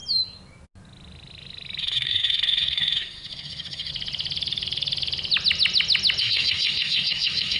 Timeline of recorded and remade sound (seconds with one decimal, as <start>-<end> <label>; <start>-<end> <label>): 0.0-1.8 recorded; 1.8-3.9 remade; 3.9-6.2 recorded; 6.2-7.6 remade